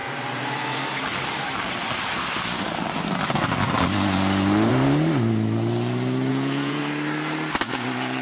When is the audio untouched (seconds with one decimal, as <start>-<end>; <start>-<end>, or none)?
0.0-6.3; 6.8-8.2